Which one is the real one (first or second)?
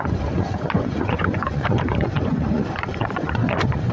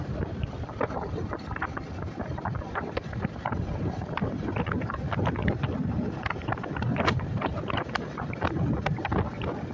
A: second